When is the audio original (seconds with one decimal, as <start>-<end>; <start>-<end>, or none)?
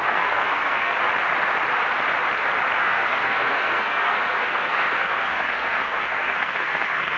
0.9-2.8